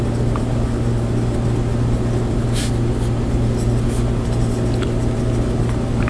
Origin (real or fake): real